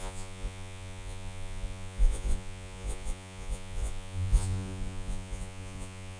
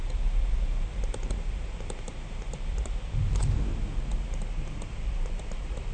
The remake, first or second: first